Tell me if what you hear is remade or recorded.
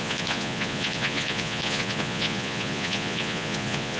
remade